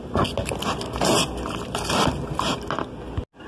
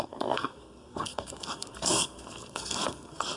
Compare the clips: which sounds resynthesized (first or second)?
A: second